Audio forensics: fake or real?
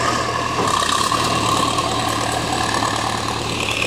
fake